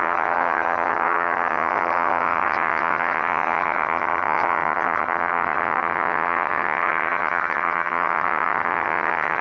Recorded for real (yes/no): no